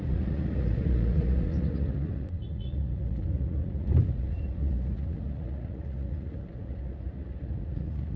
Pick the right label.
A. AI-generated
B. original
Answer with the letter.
A